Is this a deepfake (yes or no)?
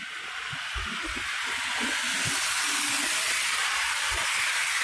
no